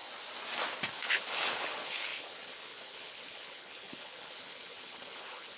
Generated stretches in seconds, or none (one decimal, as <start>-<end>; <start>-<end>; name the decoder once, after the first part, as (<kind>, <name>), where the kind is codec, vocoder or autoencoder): 0.9-5.6 (codec, HILCodec)